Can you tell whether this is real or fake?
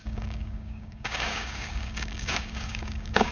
fake